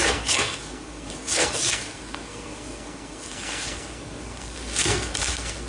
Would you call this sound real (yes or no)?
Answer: no